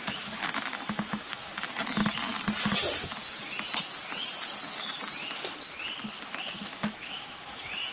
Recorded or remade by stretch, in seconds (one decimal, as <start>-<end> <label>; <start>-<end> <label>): 0.0-2.0 remade; 2.0-6.4 recorded; 6.4-7.9 remade